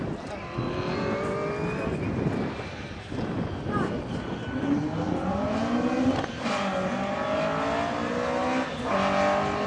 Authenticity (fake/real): real